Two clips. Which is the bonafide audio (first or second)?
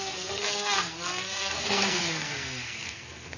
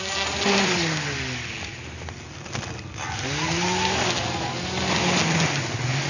second